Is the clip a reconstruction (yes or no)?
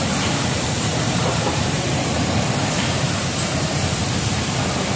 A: yes